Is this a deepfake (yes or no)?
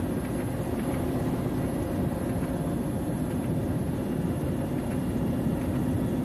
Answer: no